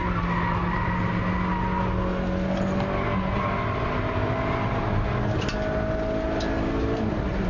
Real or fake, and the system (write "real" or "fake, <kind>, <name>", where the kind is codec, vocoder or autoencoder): real